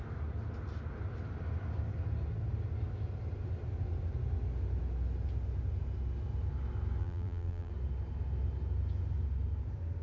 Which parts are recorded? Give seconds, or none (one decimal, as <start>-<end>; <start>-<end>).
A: 0.0-7.0; 7.7-10.0